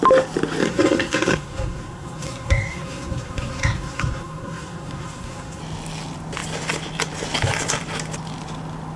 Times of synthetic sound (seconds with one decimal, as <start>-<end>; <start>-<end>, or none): 0.6-5.6